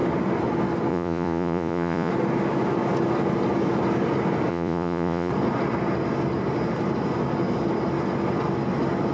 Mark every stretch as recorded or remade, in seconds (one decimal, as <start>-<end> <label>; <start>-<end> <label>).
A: 0.0-0.9 recorded; 0.9-2.1 remade; 2.1-4.5 recorded; 4.5-5.3 remade; 5.3-9.1 recorded